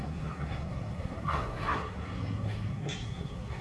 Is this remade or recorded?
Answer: remade